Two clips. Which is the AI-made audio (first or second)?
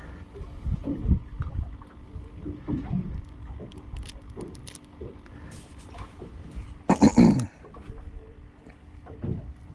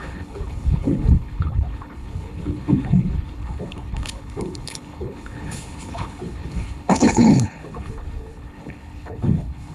second